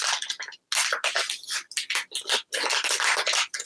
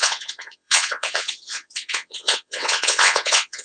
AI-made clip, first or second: second